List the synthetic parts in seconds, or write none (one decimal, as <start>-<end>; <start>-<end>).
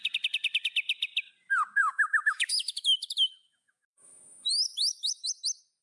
1.8-5.3